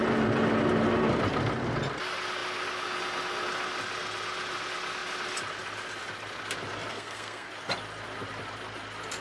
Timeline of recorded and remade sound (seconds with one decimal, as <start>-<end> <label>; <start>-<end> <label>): 0.0-6.9 recorded; 6.9-7.5 remade; 7.5-9.2 recorded